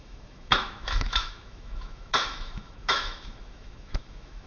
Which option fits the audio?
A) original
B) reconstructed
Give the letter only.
B